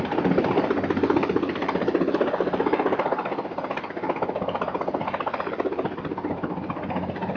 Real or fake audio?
real